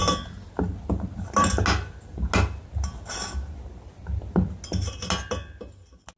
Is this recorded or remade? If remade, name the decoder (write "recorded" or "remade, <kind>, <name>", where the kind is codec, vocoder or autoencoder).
recorded